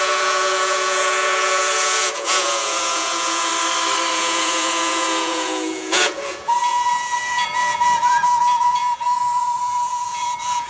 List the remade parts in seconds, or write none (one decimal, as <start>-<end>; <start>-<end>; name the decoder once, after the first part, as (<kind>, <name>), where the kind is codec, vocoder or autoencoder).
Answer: 0.0-3.5 (vocoder, Vocos); 4.1-10.7